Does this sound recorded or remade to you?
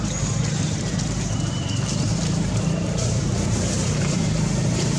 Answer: remade